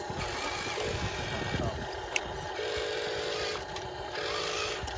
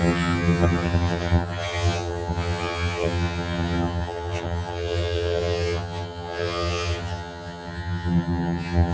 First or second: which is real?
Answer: first